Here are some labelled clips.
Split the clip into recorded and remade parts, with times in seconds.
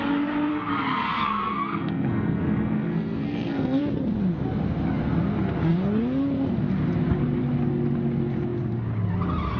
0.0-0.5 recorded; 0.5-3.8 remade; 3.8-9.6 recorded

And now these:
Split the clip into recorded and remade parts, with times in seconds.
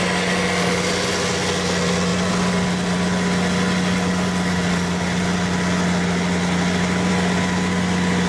0.0-8.3 recorded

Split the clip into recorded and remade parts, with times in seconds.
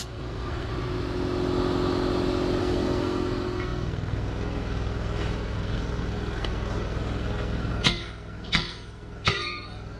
0.0-0.7 remade; 0.7-2.6 recorded; 2.6-10.0 remade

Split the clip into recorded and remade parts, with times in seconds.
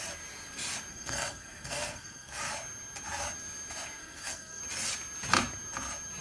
0.0-0.9 recorded; 0.9-2.4 remade; 2.4-4.0 recorded; 4.0-4.6 remade; 4.6-6.2 recorded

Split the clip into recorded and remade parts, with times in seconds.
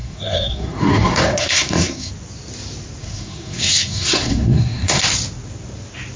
0.0-2.1 remade; 2.1-3.0 recorded; 3.0-5.0 remade; 5.0-6.2 recorded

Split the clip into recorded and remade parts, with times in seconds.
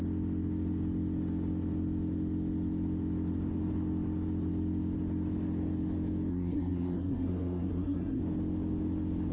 0.0-6.3 recorded; 6.3-8.2 remade; 8.2-9.3 recorded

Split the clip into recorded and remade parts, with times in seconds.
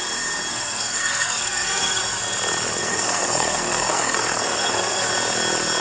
0.0-0.5 recorded; 0.5-2.0 remade; 2.0-2.8 recorded; 2.8-5.1 remade; 5.1-5.8 recorded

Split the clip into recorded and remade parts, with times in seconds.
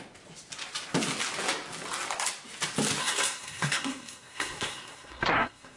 0.0-3.0 recorded; 3.0-5.8 remade